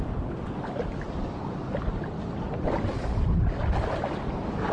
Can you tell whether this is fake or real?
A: real